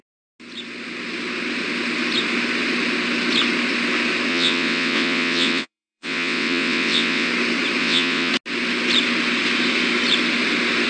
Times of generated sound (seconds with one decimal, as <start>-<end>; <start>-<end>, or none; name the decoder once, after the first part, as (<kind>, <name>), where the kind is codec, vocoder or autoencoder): 4.3-7.3 (vocoder, WaveNeXt); 7.8-8.3